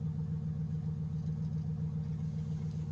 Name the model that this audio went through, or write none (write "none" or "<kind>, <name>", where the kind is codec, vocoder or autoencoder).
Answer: none